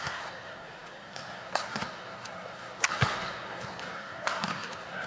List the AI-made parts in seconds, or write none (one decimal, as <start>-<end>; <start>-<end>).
0.0-5.1